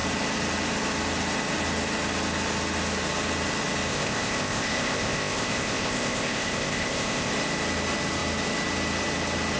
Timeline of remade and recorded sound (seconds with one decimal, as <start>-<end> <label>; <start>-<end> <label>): 0.0-3.9 recorded; 3.9-7.3 remade; 7.3-9.6 recorded